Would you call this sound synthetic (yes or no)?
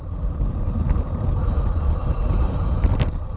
no